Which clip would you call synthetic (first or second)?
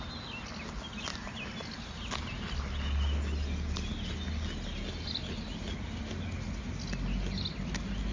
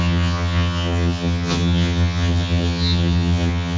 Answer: second